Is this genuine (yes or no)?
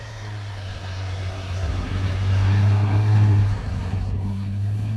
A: no